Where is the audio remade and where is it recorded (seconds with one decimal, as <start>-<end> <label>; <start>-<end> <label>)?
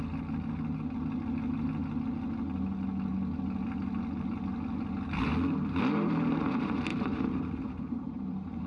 0.0-5.3 recorded; 5.3-5.8 remade; 5.8-6.9 recorded; 6.9-8.7 remade